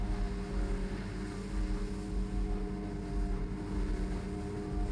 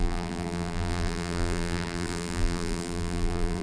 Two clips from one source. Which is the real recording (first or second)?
first